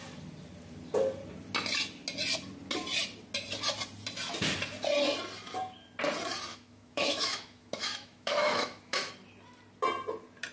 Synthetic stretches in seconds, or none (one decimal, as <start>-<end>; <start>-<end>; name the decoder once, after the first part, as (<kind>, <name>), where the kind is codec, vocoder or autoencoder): 6.5-9.1 (autoencoder, DAC-VAE)